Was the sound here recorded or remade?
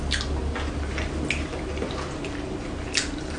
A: recorded